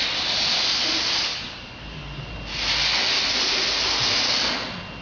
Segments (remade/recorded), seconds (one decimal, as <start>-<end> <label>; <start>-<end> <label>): 0.0-1.3 recorded; 1.3-2.3 remade; 2.3-5.0 recorded

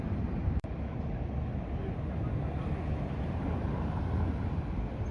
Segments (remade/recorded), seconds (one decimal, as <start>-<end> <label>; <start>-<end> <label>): 0.0-5.1 recorded

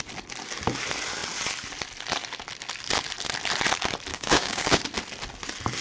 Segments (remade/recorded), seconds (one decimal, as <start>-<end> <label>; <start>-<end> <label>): 0.0-4.1 recorded; 4.1-4.8 remade; 4.8-5.8 recorded

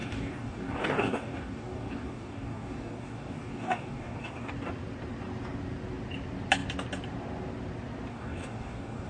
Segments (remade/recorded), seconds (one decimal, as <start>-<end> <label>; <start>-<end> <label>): 0.0-4.5 remade; 4.5-8.1 recorded; 8.1-9.1 remade